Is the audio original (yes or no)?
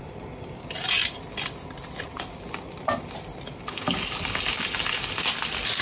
yes